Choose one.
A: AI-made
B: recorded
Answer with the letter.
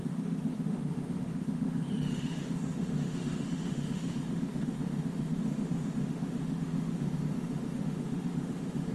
A